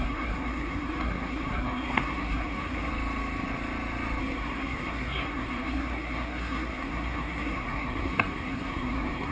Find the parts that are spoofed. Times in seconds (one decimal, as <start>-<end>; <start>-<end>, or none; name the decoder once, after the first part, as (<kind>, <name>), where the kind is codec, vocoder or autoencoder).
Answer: 0.0-2.9 (codec, SNAC); 4.2-9.3